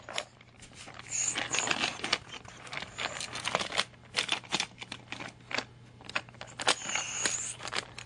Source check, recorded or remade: recorded